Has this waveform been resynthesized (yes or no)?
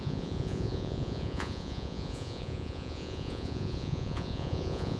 yes